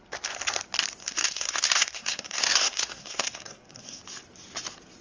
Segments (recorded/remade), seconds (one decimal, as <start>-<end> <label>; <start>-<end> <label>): 0.0-1.0 recorded; 1.0-4.0 remade; 4.0-5.0 recorded